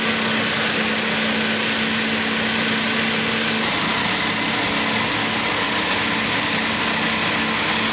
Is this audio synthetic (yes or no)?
no